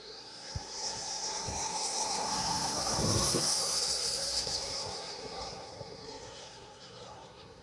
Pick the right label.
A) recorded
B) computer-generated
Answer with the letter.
B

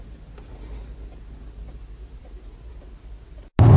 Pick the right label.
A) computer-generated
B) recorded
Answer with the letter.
B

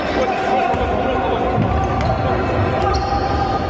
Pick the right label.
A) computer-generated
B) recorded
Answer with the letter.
B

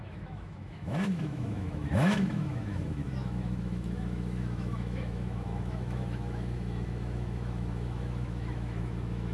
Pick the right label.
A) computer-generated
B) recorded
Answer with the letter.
A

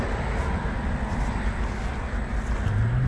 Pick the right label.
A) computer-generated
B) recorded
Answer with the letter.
B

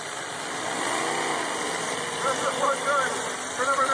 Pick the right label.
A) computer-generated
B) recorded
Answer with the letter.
A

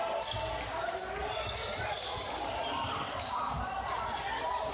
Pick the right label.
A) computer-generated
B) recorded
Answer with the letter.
B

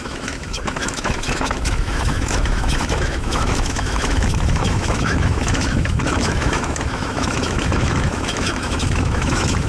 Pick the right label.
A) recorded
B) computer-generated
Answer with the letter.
B